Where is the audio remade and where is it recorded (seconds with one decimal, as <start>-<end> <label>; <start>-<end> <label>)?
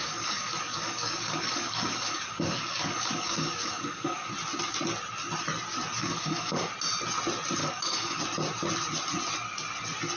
0.0-4.3 remade; 4.3-6.0 recorded; 6.0-6.7 remade; 6.7-7.6 recorded; 7.6-8.2 remade; 8.2-10.2 recorded